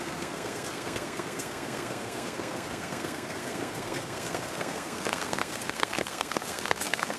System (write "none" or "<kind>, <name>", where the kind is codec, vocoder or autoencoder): codec, SNAC